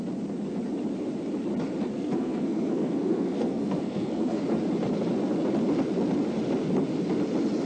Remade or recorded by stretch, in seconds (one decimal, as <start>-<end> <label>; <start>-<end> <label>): 0.0-1.9 recorded; 1.9-4.4 remade; 4.4-7.7 recorded